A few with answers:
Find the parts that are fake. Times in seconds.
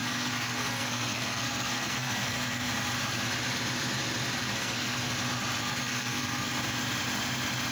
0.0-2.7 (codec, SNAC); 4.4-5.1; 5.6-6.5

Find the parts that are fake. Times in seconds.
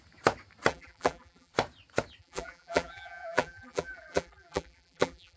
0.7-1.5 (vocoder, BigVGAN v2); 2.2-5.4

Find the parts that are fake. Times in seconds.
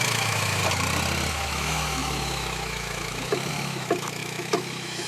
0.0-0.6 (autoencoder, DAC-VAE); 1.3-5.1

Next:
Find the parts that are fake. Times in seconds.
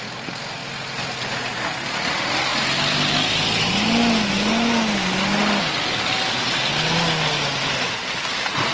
none